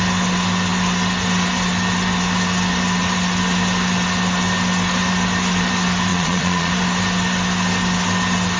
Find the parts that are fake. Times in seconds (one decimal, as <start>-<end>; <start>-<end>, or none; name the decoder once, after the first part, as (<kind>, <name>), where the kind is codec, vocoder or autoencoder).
6.1-6.7 (vocoder, Vocos)